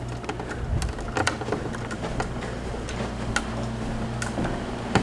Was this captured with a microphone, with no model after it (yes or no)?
yes